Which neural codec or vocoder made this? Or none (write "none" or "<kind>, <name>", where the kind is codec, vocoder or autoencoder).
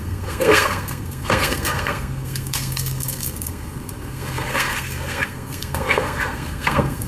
codec, SNAC